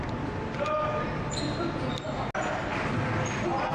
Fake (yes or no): no